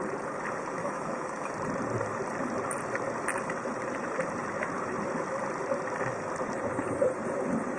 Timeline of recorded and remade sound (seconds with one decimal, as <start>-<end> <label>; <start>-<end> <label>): 0.0-0.8 recorded; 0.8-1.5 remade; 1.5-7.8 recorded